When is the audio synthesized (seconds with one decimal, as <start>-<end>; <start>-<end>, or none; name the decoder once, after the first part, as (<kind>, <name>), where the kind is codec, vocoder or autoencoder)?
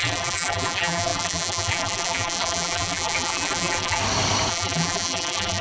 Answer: 0.0-4.0 (vocoder, BigVGAN v2); 4.5-5.6